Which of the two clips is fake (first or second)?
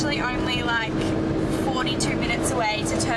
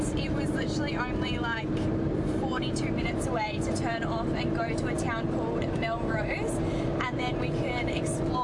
second